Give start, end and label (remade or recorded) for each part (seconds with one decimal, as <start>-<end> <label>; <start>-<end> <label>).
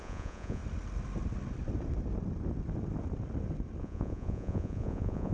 0.0-0.6 remade; 0.6-3.8 recorded; 3.8-5.3 remade